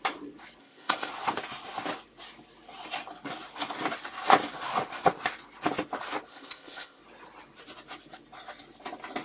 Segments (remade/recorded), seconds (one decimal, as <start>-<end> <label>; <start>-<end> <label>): 0.0-0.6 recorded; 0.6-1.1 remade; 1.1-6.3 recorded; 6.3-7.0 remade; 7.0-9.2 recorded